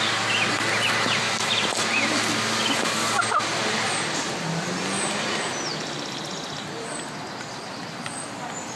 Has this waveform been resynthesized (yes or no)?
no